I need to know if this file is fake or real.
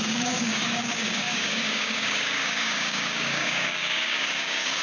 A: fake